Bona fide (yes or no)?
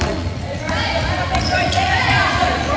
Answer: no